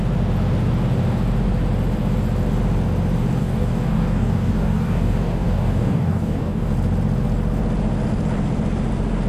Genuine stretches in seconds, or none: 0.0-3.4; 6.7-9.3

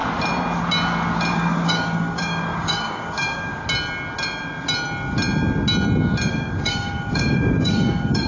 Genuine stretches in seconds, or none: 0.0-1.3; 3.5-6.3

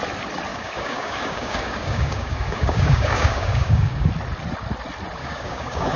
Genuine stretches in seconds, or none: 0.0-0.5; 4.1-5.2

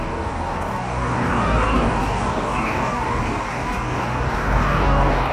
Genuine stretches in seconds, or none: none

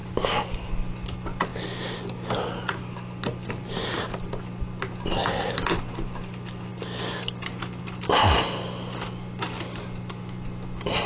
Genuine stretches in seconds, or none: 0.7-11.1